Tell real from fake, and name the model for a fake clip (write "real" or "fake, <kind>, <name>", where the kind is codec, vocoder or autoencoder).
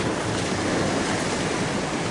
real